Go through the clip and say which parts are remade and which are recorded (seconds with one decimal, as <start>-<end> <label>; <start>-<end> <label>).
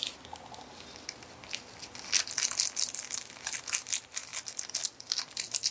0.0-5.7 recorded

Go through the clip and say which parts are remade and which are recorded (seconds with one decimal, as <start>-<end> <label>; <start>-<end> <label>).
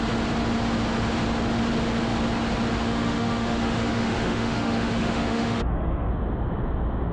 0.0-2.7 recorded; 2.7-6.1 remade; 6.1-7.1 recorded